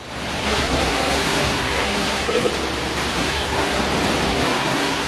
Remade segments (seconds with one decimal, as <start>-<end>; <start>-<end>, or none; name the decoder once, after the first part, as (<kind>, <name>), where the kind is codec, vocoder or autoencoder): 0.4-2.5 (codec, SNAC); 3.1-3.8; 4.3-5.1